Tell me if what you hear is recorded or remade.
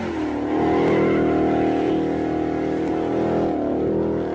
recorded